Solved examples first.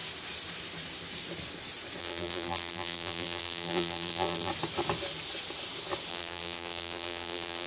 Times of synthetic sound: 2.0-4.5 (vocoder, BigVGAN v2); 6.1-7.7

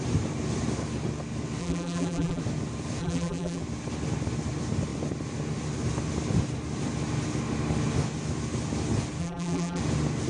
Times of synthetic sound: 1.6-2.4 (vocoder, BigVGAN v2); 3.0-3.6; 9.2-9.8

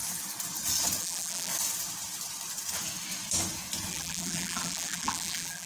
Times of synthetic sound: 1.0-1.5 (vocoder, BigVGAN v2); 3.9-5.7

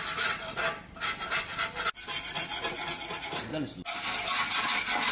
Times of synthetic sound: 0.0-0.4 (vocoder, Vocos); 2.3-3.5

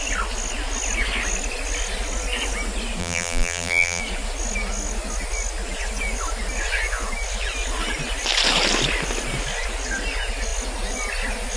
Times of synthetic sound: 3.0-4.0 (vocoder, BigVGAN v2)